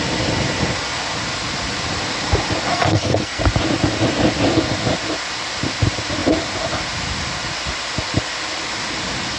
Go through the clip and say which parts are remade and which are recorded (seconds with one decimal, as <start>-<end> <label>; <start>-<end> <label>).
0.0-2.7 recorded; 2.7-3.4 remade; 3.4-9.4 recorded